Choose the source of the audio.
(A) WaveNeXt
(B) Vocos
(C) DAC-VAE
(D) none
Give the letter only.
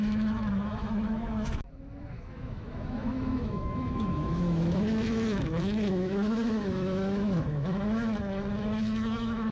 C